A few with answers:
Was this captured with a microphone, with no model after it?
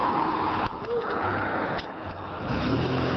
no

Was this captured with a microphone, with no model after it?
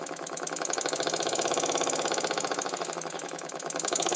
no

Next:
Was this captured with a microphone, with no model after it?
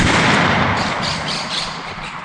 yes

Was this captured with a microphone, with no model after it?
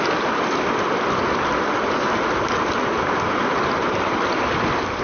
yes